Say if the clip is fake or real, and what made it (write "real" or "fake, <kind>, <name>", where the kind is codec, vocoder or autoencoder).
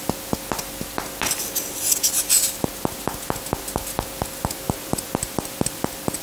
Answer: real